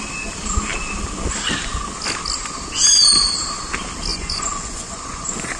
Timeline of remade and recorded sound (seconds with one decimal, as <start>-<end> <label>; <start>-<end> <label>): 0.0-4.1 recorded; 4.1-5.6 remade